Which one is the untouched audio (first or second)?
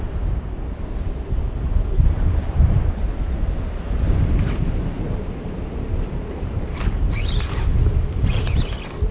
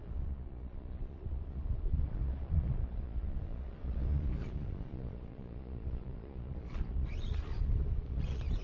first